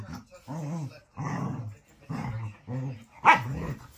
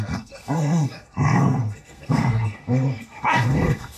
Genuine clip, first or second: first